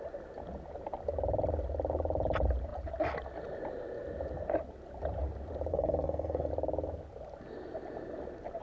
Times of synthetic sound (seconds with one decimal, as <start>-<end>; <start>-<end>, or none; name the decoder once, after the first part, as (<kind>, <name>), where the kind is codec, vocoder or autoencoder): 5.7-6.5 (codec, SNAC)